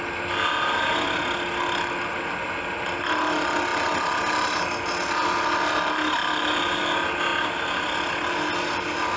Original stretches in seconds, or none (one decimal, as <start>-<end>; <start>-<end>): 0.0-9.2